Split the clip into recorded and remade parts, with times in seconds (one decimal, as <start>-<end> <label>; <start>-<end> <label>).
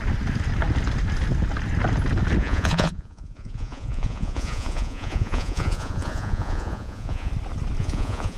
0.0-2.4 recorded; 2.4-7.3 remade; 7.3-7.8 recorded; 7.8-8.4 remade